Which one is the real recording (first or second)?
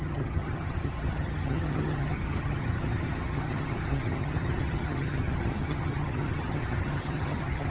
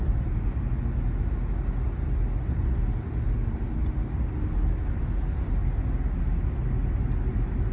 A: second